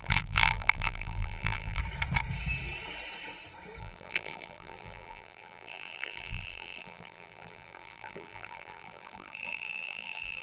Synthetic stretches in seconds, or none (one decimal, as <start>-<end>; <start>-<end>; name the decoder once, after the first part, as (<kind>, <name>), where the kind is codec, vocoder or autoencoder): 0.0-1.8 (vocoder, BigVGAN v2); 3.8-10.4